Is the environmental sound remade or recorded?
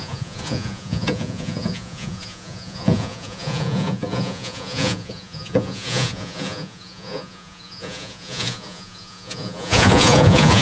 remade